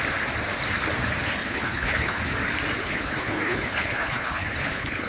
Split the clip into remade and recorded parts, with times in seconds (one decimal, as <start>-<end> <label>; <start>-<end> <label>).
0.0-1.4 recorded; 1.4-2.2 remade; 2.2-2.8 recorded; 2.8-5.1 remade